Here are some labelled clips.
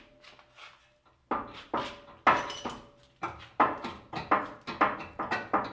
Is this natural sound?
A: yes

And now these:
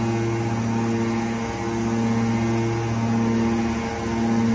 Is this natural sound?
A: yes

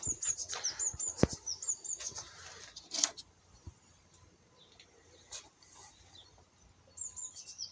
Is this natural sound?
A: yes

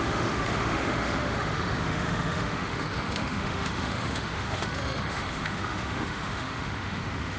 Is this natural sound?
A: no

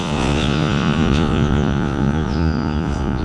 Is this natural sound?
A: no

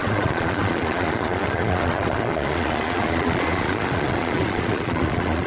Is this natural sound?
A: no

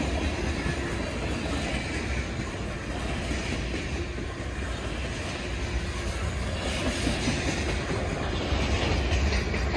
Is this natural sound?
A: yes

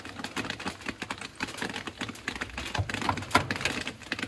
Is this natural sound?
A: yes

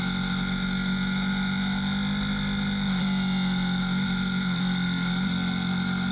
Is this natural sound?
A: yes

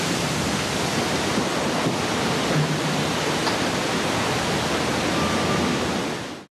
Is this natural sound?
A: yes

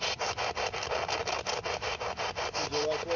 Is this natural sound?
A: yes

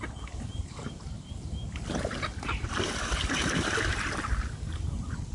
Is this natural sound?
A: yes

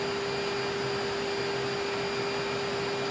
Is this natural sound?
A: yes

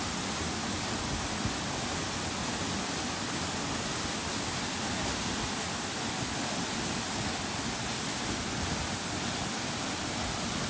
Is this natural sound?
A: yes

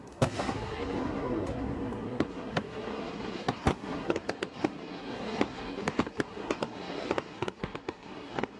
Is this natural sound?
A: no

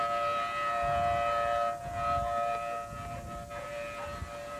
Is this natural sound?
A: yes